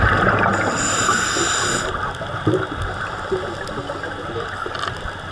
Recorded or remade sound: recorded